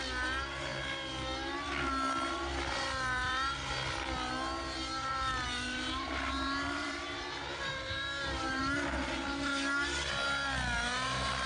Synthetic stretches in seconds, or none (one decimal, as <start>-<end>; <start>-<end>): 5.1-8.6

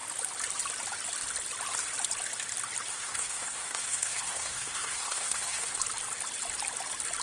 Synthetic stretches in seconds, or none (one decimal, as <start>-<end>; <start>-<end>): 2.9-5.8

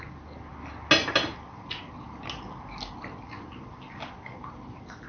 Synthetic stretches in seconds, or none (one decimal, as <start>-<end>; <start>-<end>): none

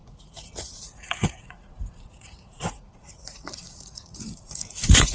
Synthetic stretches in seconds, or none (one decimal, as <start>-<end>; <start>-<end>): 0.0-5.1

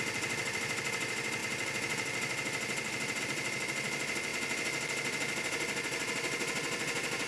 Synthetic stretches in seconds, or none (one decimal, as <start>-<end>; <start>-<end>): 0.0-4.3

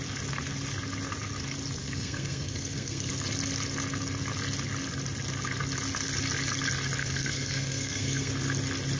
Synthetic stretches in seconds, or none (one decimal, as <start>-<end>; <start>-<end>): 1.8-3.1; 7.0-8.3